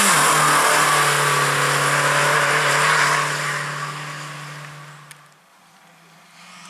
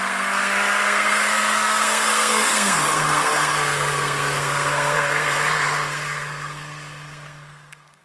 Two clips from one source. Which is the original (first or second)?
first